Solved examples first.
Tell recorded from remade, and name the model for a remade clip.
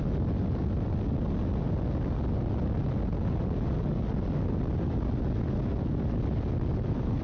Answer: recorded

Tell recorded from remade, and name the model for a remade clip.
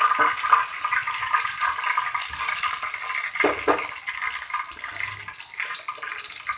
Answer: recorded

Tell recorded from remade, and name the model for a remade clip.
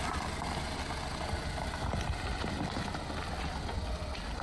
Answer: recorded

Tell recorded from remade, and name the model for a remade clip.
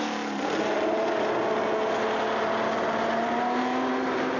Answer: recorded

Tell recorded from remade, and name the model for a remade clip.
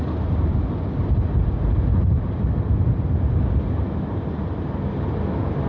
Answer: recorded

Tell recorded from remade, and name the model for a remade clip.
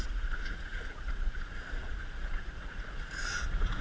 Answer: remade, vocoder, Vocos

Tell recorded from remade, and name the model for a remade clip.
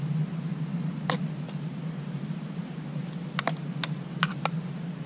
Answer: recorded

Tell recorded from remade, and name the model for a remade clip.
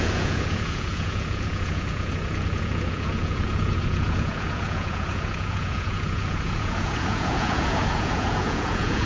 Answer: remade, vocoder, Vocos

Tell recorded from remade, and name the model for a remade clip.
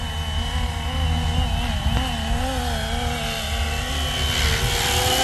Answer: recorded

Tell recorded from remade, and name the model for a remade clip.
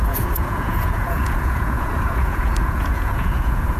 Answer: remade, vocoder, Vocos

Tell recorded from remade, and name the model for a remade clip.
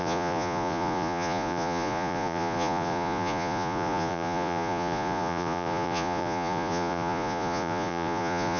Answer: remade, vocoder, Vocos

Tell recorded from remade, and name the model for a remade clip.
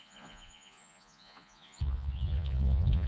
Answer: remade, vocoder, Vocos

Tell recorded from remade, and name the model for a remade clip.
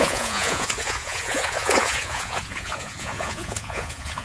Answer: remade, vocoder, Vocos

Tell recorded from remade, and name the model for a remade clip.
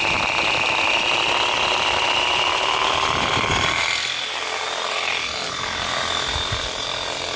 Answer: recorded